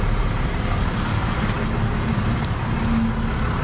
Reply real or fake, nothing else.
real